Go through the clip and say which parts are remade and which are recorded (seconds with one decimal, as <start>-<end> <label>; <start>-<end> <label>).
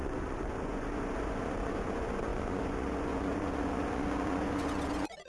0.0-5.3 remade